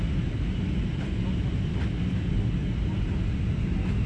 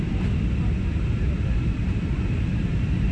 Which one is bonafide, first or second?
first